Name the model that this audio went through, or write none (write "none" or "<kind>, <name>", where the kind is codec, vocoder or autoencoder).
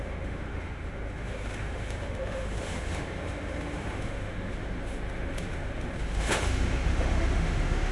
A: autoencoder, DAC-VAE